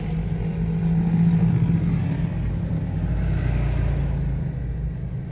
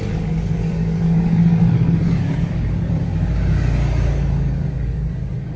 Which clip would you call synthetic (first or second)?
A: second